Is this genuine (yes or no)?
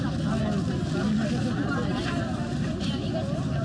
yes